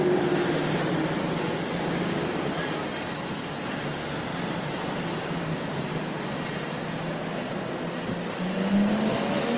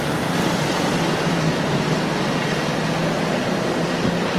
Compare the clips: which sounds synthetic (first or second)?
second